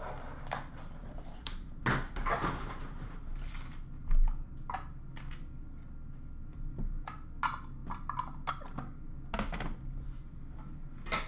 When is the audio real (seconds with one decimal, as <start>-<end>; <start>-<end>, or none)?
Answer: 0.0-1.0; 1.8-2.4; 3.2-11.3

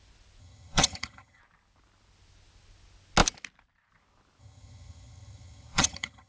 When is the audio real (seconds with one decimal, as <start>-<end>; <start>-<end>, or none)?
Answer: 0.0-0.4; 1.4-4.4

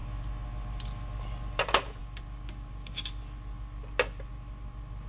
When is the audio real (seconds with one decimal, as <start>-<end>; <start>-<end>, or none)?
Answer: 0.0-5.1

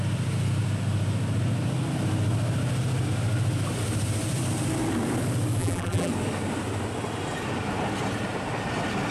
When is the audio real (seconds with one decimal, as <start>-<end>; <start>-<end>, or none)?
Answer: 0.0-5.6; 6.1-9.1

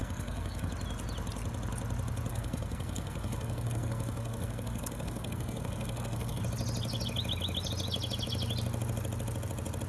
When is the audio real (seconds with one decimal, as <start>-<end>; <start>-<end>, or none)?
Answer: 0.7-2.3; 6.4-9.9

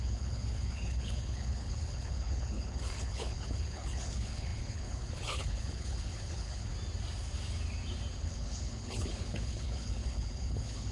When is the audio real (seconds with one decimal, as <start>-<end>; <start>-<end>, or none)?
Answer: 6.7-8.2

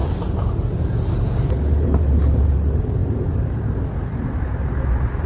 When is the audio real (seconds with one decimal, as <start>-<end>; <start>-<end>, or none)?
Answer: 1.1-3.0; 3.8-5.3

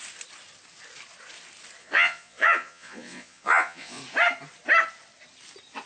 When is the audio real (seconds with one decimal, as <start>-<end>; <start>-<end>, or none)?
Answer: 0.0-1.8; 4.0-5.9